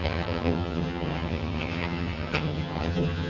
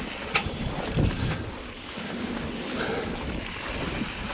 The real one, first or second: second